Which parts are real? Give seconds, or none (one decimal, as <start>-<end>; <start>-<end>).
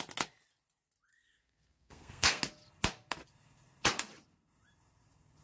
0.0-1.1; 2.4-5.4